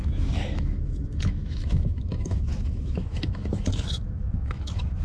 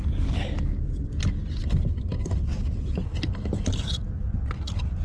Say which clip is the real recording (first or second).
second